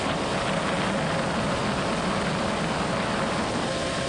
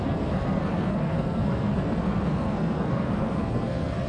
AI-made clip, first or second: second